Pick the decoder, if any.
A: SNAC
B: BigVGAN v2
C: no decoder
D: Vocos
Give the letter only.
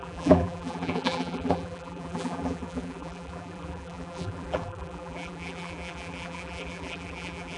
B